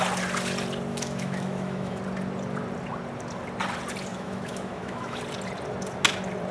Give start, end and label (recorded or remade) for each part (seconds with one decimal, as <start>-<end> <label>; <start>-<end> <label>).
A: 0.0-0.9 recorded; 0.9-2.0 remade; 2.0-4.1 recorded; 4.1-5.2 remade; 5.2-6.5 recorded

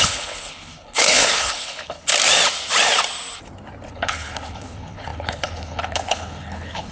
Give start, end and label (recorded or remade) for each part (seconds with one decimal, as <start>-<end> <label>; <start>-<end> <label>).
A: 0.0-2.1 remade; 2.1-3.9 recorded; 3.9-6.9 remade

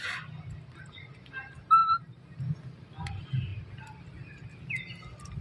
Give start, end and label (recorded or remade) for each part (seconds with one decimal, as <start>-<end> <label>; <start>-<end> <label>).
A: 0.0-1.8 recorded; 1.8-2.4 remade; 2.4-5.4 recorded